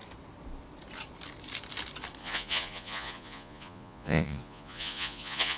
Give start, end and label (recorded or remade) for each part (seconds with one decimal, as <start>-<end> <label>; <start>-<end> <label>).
0.0-2.2 recorded; 2.2-5.6 remade